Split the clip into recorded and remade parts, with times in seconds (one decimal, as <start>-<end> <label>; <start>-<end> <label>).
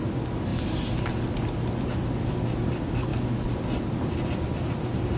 0.0-5.2 recorded